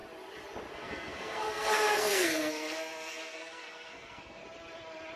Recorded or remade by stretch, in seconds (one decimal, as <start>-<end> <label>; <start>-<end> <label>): 0.0-0.7 recorded; 0.7-4.4 remade; 4.4-5.2 recorded